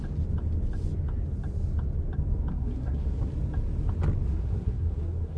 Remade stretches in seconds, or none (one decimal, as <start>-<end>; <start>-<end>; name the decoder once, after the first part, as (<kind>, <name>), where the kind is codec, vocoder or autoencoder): 2.5-3.3 (codec, SNAC); 4.3-5.4